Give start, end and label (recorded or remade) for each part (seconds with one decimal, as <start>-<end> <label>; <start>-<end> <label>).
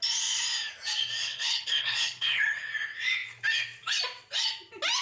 0.0-1.2 recorded; 1.2-2.7 remade; 2.7-5.0 recorded